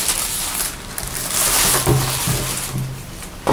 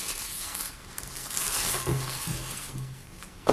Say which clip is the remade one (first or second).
second